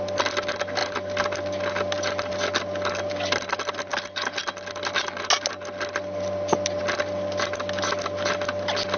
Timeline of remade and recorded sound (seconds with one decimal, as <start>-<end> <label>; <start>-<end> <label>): 0.0-9.0 recorded